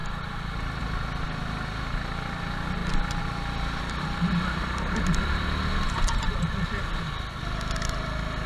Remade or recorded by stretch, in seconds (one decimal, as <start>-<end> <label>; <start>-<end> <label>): 0.0-8.5 recorded